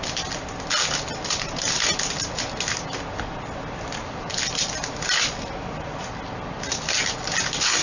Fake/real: real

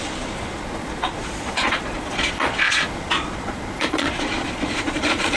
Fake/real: fake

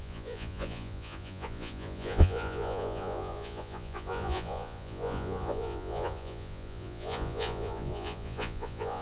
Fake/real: fake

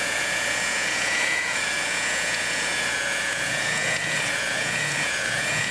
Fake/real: fake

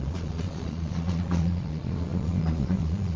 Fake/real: fake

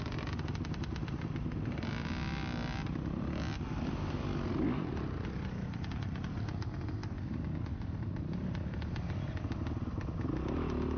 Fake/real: real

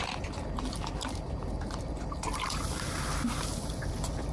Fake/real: real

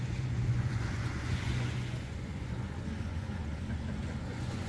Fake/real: fake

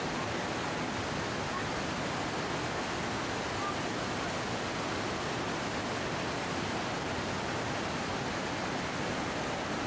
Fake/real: real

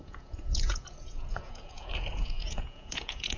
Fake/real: fake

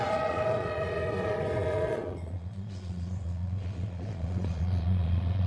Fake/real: fake